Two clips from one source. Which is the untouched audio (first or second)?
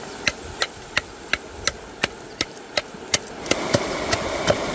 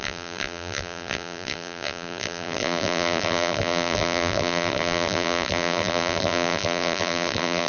first